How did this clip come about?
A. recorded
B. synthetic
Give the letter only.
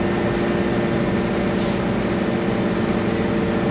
A